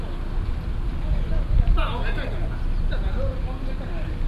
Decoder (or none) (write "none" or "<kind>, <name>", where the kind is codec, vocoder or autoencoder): none